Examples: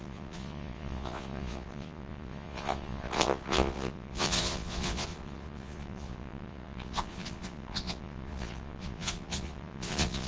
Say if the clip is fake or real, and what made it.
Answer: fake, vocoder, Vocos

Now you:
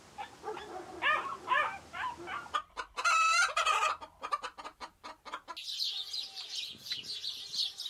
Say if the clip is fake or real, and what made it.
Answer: real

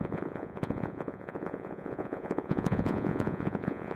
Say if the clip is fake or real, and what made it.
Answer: fake, vocoder, Vocos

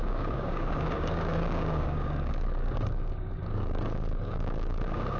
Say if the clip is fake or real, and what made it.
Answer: fake, codec, DAC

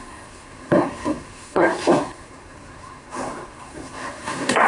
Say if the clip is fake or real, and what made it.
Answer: fake, codec, SNAC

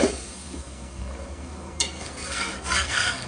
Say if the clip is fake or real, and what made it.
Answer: fake, codec, SNAC